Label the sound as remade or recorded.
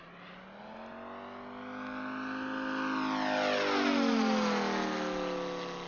recorded